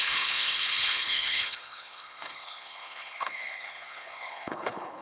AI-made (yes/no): yes